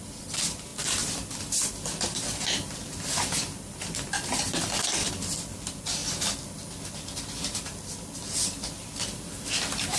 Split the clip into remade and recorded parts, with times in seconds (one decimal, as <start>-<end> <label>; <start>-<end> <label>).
0.0-10.0 remade